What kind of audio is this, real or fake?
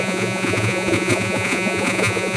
fake